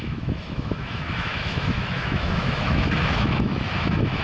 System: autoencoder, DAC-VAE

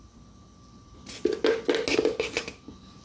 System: none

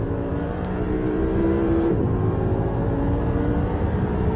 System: vocoder, BigVGAN v2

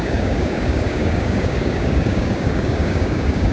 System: codec, DAC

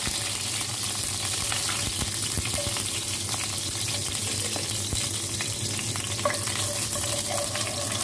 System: none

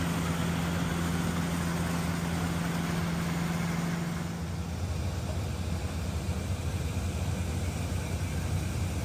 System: none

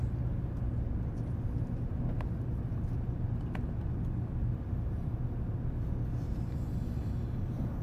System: none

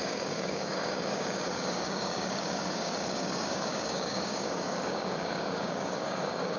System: codec, DAC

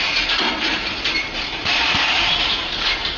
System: vocoder, BigVGAN v2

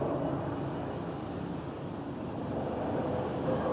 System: none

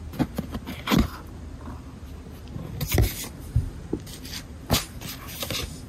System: none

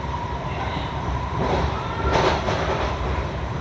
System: vocoder, BigVGAN v2